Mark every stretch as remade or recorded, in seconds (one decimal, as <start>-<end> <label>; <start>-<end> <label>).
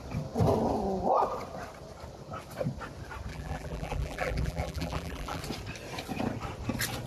0.0-3.3 recorded; 3.3-5.4 remade; 5.4-7.1 recorded